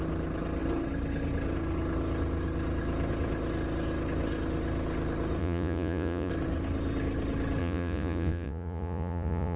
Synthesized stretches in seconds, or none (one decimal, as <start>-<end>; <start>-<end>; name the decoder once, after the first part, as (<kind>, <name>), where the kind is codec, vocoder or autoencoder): 5.4-6.3 (vocoder, Vocos); 7.6-9.6